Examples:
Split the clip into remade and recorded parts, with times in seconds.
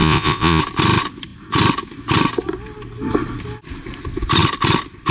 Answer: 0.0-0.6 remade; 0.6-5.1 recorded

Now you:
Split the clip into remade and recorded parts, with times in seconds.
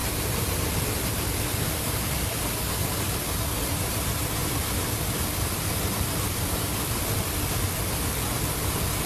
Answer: 0.0-1.1 recorded; 1.1-9.1 remade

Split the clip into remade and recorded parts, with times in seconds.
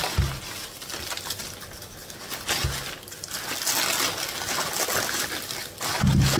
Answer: 0.0-6.4 recorded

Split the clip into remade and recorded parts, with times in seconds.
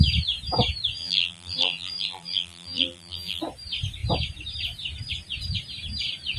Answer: 0.0-1.0 recorded; 1.0-3.4 remade; 3.4-6.4 recorded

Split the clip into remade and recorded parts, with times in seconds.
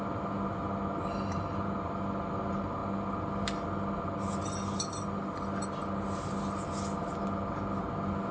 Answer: 0.0-8.3 recorded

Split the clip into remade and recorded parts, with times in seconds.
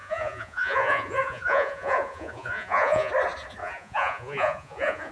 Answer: 0.0-3.1 remade; 3.1-3.6 recorded; 3.6-5.1 remade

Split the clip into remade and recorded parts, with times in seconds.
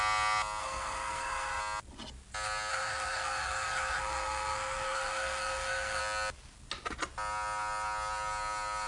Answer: 0.0-0.6 recorded; 0.6-1.6 remade; 1.6-2.7 recorded; 2.7-6.0 remade; 6.0-8.9 recorded